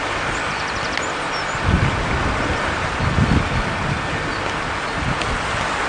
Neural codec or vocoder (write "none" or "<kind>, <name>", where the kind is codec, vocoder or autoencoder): none